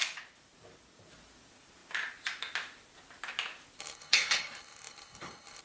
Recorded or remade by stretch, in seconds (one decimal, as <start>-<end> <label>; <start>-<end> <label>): 0.0-3.8 recorded; 3.8-5.6 remade